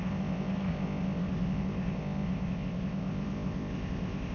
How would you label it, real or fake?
fake